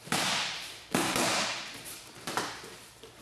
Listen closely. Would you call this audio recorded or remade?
remade